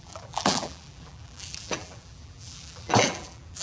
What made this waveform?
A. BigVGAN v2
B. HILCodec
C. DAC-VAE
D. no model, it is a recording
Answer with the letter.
A